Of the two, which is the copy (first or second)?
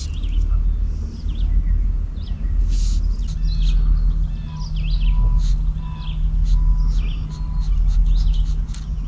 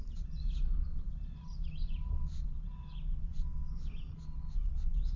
second